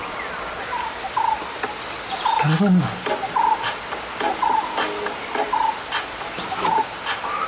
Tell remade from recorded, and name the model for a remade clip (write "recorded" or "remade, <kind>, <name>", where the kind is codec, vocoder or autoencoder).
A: recorded